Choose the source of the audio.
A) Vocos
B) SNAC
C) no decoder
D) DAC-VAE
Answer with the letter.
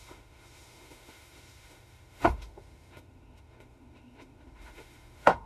D